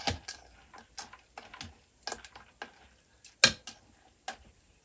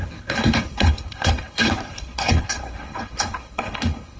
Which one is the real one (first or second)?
first